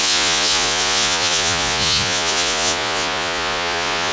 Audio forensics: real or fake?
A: fake